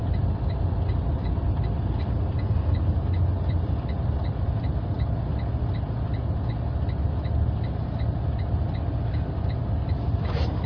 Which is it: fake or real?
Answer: real